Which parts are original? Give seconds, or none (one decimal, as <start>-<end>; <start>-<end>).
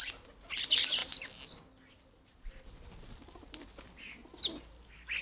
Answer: 0.0-5.2